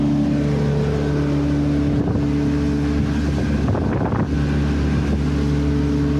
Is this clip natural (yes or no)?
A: yes